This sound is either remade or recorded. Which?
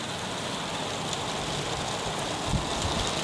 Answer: recorded